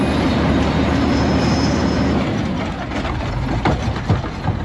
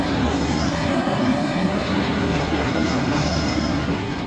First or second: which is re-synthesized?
second